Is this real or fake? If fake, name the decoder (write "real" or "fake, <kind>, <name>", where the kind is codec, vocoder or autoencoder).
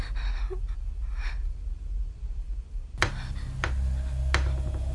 real